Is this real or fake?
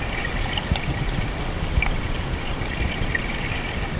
fake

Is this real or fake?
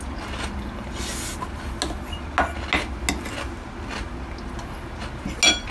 real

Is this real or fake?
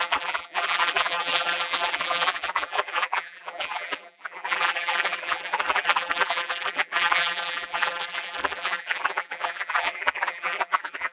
fake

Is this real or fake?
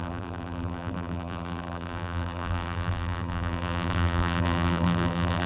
fake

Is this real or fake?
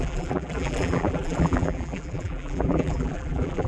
fake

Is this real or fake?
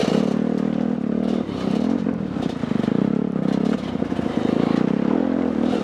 real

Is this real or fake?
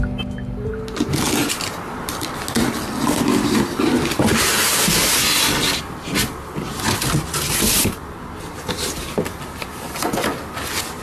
real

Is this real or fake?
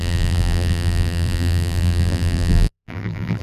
fake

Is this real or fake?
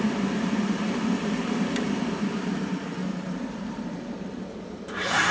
fake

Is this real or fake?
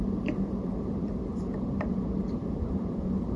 fake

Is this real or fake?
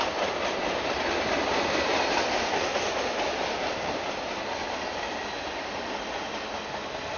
real